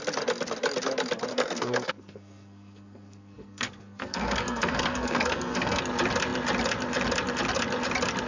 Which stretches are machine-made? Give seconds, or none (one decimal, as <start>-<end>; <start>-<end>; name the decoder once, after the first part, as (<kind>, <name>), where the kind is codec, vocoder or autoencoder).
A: 1.3-5.8 (codec, SNAC)